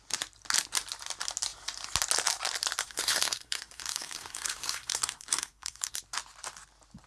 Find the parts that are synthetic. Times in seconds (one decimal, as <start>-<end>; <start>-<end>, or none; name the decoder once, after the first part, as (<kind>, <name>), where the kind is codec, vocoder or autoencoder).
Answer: 2.8-6.0 (codec, SNAC)